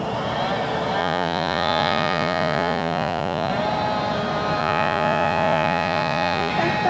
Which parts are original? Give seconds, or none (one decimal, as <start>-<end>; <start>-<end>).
0.0-1.0; 3.5-4.6; 6.5-6.9